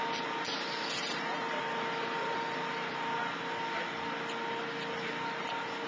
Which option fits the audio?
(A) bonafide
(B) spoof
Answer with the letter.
A